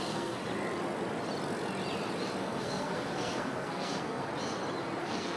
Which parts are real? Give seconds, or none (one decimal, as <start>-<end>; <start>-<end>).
0.4-2.4; 4.3-5.0

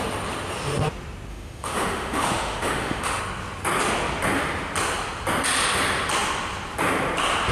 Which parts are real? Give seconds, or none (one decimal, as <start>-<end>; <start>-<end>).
0.0-1.3; 3.2-7.5

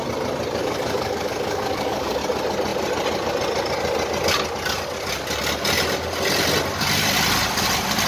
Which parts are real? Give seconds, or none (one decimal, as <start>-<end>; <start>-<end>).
0.0-0.6; 2.2-8.1

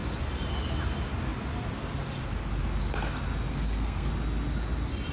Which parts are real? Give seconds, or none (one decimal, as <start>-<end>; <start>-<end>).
0.0-3.5; 4.1-5.1

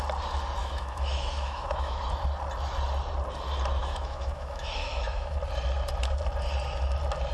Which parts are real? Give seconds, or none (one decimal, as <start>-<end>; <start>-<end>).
0.0-0.6; 2.0-3.8; 5.4-7.3

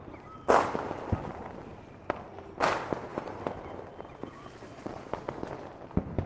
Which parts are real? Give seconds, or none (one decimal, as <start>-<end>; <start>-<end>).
0.0-4.7; 5.3-6.3

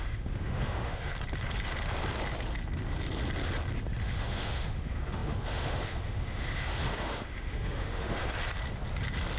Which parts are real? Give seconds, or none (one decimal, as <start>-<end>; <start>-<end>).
1.1-4.0; 8.2-9.4